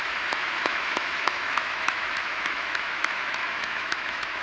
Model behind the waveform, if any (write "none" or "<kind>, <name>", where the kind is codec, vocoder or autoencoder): autoencoder, DAC-VAE